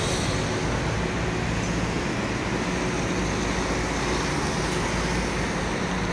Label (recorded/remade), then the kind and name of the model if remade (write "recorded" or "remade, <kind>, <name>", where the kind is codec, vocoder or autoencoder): recorded